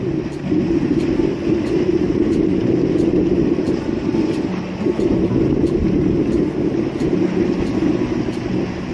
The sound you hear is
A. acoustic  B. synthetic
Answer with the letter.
A